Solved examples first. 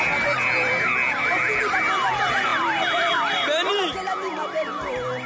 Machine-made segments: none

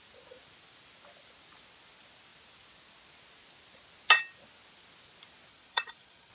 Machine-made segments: 5.5-6.3 (vocoder, Vocos)